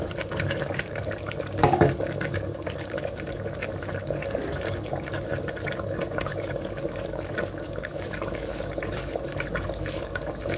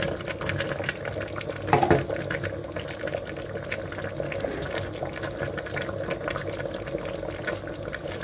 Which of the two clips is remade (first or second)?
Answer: first